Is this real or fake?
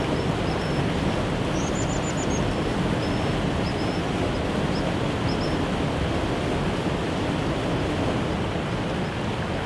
real